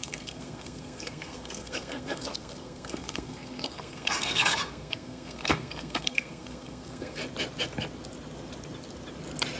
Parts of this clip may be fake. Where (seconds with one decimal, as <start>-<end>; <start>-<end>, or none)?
0.0-7.2